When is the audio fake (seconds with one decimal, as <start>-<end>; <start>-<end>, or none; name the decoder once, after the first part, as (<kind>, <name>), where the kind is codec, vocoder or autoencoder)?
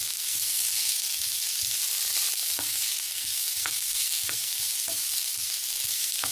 0.0-1.8 (codec, SNAC); 2.3-6.3